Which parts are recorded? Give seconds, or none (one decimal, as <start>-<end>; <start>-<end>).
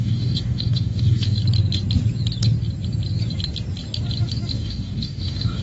1.4-4.5